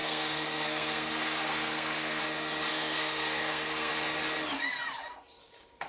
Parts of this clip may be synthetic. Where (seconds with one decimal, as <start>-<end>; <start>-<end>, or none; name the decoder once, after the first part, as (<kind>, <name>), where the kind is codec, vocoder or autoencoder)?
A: 0.0-2.2 (codec, SNAC); 2.7-3.9